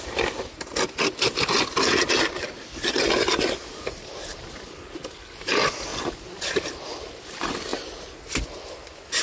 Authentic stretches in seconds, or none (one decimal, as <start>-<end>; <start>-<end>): 0.0-9.2